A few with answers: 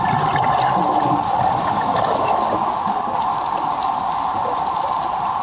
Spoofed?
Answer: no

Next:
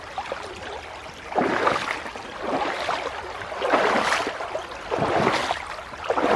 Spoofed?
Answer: no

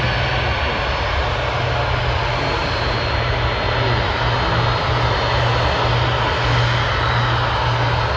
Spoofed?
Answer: no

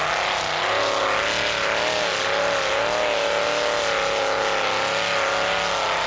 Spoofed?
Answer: no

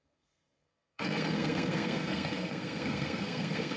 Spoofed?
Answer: yes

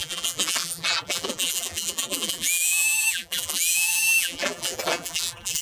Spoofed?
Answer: yes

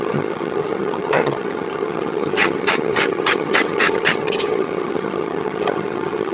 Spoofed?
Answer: yes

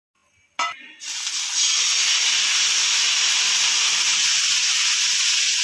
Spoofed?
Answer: no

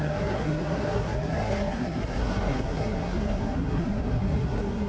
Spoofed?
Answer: yes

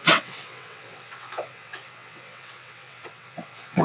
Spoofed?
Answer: yes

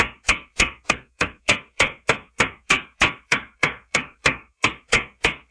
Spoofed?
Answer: yes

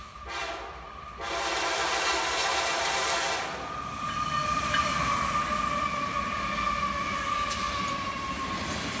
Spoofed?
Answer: yes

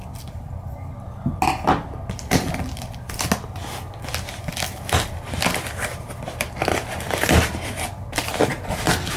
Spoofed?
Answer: no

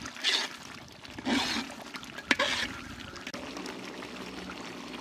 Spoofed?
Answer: no